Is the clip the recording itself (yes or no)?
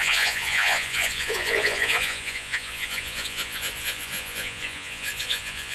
no